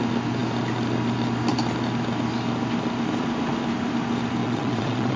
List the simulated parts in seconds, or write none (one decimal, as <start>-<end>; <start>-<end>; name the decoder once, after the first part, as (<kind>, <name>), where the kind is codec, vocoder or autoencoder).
4.4-5.2 (vocoder, WaveNeXt)